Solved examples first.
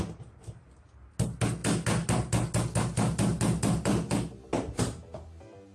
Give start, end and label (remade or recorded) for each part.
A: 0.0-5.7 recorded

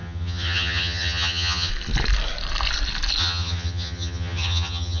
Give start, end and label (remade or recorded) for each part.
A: 0.0-1.7 remade; 1.7-3.2 recorded; 3.2-5.0 remade